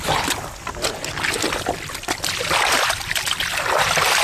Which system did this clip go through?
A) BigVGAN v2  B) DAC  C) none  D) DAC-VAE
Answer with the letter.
C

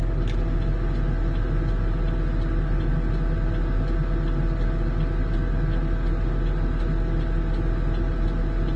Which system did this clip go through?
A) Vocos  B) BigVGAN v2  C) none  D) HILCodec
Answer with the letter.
C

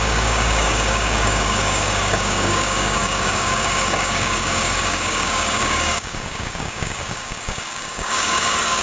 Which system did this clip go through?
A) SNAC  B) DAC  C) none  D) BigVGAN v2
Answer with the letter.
B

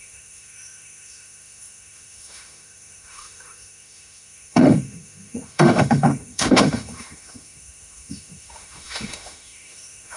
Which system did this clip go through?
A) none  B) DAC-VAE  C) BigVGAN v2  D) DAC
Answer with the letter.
B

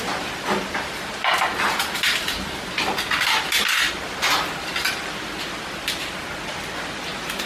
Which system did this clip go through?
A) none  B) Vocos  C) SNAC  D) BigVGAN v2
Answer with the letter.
A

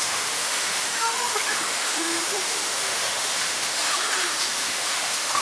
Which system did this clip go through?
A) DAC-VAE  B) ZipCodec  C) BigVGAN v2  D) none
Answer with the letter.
A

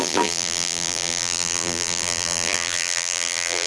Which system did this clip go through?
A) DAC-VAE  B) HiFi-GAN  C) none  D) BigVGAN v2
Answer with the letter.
D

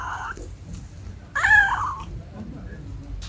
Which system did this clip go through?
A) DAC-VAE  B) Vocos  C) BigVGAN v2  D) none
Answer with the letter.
D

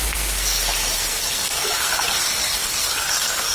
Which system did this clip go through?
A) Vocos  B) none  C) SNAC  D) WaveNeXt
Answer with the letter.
C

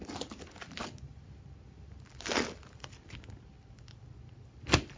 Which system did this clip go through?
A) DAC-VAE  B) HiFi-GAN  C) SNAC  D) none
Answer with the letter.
D